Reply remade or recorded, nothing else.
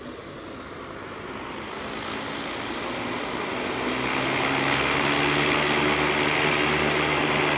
recorded